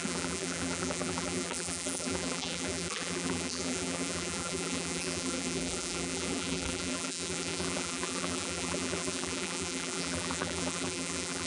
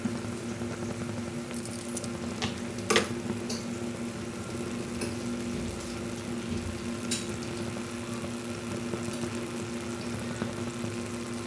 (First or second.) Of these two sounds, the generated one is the first